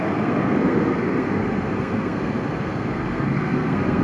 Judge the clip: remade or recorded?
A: remade